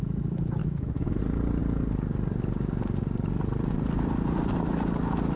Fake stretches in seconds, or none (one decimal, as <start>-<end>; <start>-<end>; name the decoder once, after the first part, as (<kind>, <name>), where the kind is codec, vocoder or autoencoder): 0.6-1.2 (autoencoder, DAC-VAE)

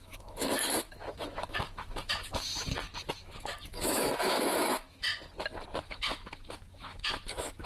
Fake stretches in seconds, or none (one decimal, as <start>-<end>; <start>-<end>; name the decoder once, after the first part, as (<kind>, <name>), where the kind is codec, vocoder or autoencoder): 0.0-2.5 (autoencoder, DAC-VAE); 3.1-5.1; 5.8-7.7

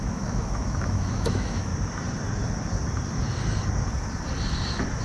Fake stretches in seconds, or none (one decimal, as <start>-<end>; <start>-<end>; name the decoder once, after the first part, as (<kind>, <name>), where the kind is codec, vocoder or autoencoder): 0.0-1.7 (autoencoder, DAC-VAE)